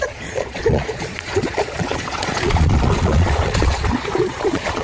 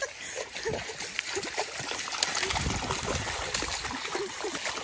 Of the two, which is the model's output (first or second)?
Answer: first